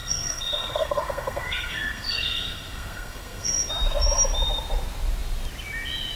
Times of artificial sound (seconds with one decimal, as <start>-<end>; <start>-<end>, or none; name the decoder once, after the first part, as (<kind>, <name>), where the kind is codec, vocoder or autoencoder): 0.0-3.7 (codec, SNAC)